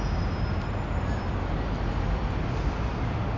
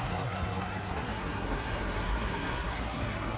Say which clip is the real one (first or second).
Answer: first